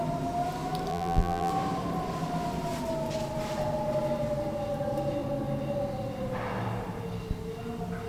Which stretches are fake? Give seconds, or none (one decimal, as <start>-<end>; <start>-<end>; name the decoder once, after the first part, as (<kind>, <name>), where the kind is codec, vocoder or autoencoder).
0.9-1.5 (vocoder, BigVGAN v2)